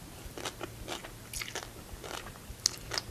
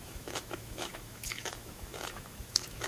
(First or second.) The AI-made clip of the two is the second